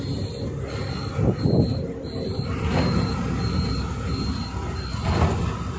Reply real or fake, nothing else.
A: real